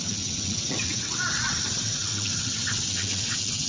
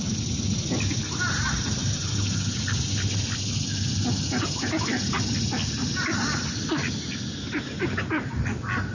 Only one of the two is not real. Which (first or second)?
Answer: first